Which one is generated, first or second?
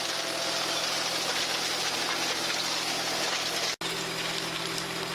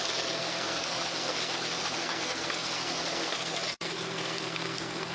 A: second